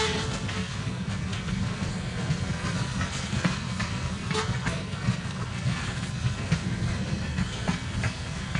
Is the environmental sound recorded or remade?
remade